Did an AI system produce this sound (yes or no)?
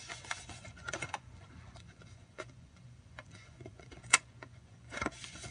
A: yes